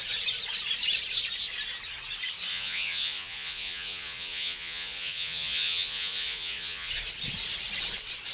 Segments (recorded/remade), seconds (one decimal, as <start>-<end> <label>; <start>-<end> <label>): 0.0-2.5 recorded; 2.5-6.9 remade; 6.9-8.3 recorded